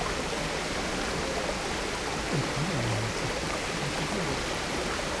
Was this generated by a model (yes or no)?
no